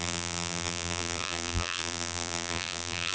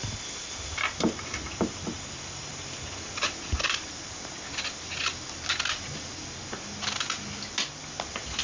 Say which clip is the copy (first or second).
first